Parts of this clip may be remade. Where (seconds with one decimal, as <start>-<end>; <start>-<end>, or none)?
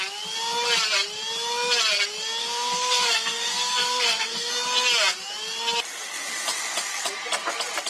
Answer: 2.4-4.5